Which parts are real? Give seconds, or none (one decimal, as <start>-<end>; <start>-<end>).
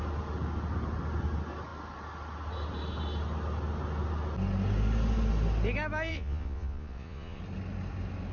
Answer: 0.0-6.1; 7.4-8.3